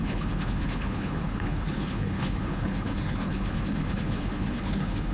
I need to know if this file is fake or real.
fake